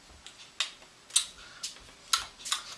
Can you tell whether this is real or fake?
real